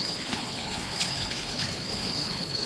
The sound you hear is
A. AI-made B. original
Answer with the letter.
A